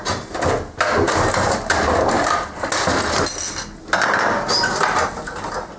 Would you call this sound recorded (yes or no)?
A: yes